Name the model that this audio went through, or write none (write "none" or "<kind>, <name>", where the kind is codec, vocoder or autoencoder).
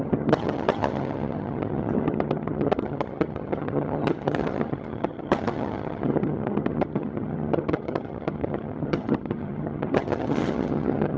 vocoder, HiFi-GAN